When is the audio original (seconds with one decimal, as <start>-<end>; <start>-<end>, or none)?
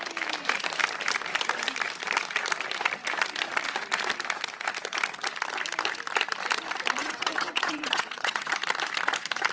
0.0-7.0; 8.5-9.5